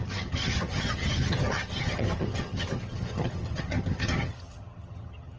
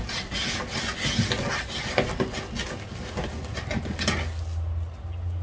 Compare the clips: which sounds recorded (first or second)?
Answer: second